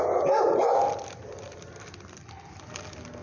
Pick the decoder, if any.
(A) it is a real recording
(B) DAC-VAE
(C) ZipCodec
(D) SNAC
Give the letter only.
A